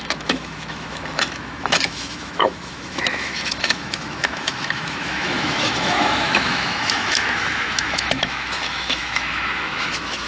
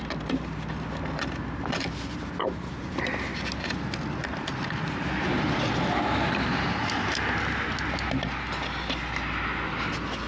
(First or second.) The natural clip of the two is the second